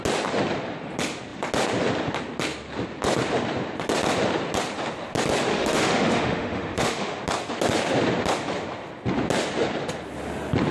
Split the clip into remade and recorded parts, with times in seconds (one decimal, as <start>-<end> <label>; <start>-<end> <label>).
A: 0.0-5.5 recorded; 5.5-7.2 remade; 7.2-10.7 recorded